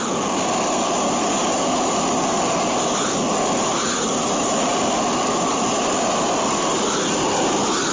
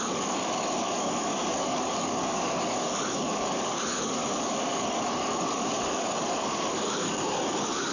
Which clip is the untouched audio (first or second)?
first